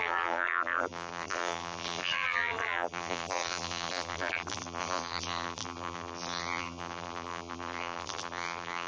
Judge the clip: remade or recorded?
remade